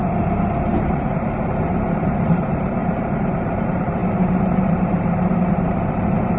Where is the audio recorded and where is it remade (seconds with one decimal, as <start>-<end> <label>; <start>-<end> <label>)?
0.0-0.9 recorded; 0.9-2.8 remade; 2.8-3.3 recorded; 3.3-6.4 remade